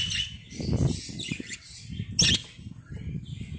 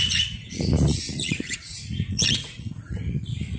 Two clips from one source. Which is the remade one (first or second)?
second